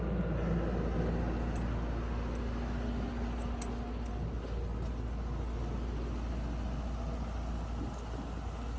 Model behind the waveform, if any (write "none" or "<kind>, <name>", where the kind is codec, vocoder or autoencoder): none